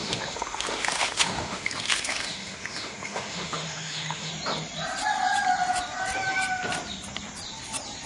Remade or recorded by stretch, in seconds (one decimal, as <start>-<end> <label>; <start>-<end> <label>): 0.0-4.3 remade; 4.3-8.1 recorded